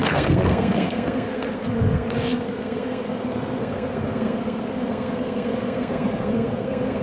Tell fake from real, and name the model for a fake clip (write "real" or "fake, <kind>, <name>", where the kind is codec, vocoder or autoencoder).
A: fake, codec, SNAC